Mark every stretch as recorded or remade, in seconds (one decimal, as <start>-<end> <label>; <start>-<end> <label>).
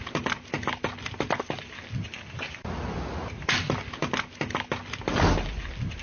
0.0-6.0 recorded